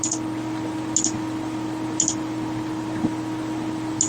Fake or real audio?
real